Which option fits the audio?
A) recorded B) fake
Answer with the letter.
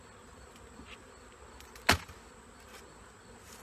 A